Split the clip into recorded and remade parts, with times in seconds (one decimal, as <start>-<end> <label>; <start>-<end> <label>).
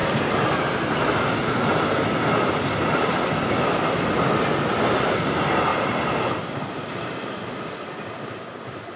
0.0-1.0 remade; 1.0-5.7 recorded; 5.7-7.6 remade; 7.6-9.0 recorded